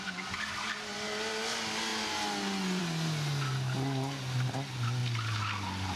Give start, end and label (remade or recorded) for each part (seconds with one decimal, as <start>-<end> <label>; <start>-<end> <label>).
0.0-6.0 recorded